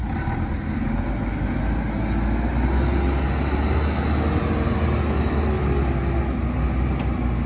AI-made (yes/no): no